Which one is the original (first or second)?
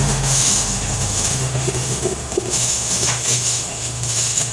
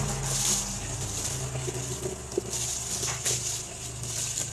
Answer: second